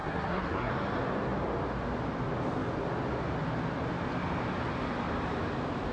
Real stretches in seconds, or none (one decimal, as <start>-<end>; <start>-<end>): 0.7-5.9